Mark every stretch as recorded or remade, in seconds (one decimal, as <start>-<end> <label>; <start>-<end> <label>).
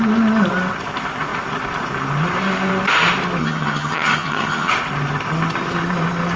0.0-3.4 recorded; 3.4-4.7 remade; 4.7-6.4 recorded